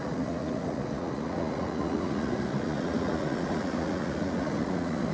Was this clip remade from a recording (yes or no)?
yes